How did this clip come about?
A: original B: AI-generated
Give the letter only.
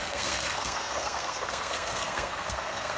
B